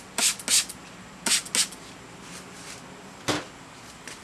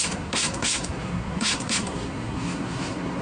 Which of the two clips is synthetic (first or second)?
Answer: second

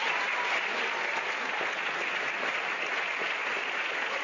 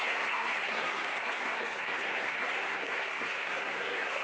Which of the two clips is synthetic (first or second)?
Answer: second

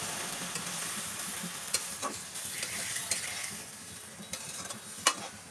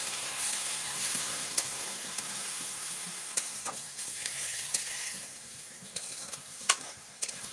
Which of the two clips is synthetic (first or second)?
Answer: second